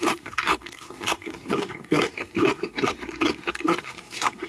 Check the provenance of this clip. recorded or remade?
remade